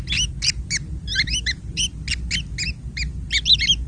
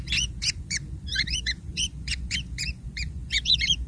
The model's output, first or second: second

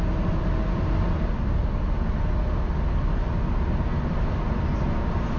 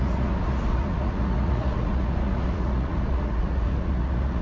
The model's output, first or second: second